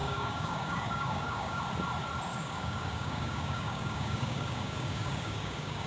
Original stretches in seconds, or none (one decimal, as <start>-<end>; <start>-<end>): 1.6-2.3